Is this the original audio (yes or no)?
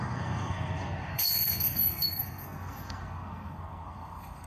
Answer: no